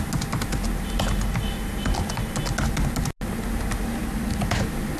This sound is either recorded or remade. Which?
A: recorded